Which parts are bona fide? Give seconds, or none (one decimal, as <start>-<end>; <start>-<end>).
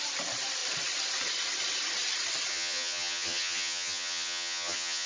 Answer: 0.0-2.5